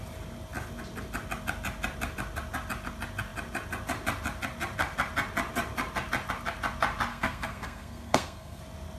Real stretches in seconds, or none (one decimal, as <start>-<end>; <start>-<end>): 0.0-7.1; 8.6-9.0